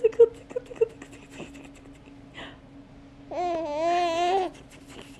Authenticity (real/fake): real